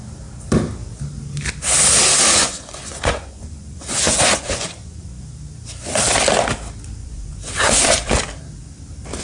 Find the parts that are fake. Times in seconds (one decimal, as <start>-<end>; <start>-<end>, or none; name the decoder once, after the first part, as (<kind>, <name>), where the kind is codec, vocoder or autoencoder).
2.3-5.2 (vocoder, Vocos); 7.0-8.1

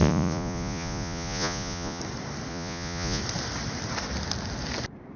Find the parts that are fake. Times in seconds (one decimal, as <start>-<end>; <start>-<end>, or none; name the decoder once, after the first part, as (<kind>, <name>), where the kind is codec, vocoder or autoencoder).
0.0-2.0 (vocoder, Vocos); 2.5-3.2

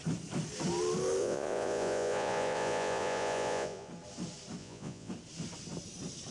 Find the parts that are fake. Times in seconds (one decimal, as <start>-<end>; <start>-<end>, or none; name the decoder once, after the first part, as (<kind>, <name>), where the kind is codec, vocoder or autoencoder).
1.2-3.9 (vocoder, Vocos); 4.6-5.1

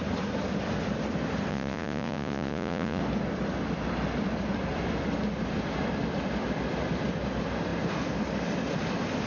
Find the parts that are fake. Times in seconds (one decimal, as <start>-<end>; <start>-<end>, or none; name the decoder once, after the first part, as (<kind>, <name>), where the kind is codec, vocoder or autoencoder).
1.5-3.0 (vocoder, Vocos)

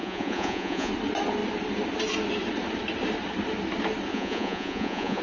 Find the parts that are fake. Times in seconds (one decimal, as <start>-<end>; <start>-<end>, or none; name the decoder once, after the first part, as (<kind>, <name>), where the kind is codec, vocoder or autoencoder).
0.0-0.9 (vocoder, Vocos); 4.1-5.2

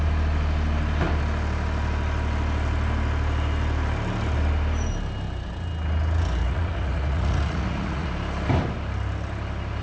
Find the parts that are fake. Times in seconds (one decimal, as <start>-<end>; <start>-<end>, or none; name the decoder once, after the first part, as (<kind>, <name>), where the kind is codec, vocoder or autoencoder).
6.4-8.1 (vocoder, Vocos)

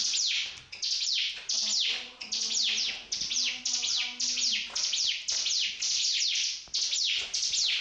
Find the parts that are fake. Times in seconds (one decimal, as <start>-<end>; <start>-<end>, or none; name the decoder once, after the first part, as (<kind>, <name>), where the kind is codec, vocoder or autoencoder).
none

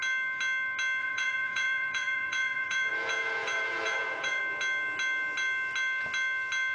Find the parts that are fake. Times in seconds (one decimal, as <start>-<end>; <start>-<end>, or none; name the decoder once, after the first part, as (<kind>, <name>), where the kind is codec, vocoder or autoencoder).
1.0-4.4 (vocoder, Vocos)